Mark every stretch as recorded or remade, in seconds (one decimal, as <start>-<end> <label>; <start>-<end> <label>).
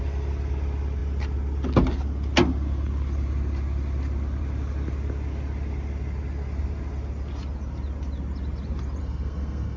0.0-9.0 recorded; 9.0-9.8 remade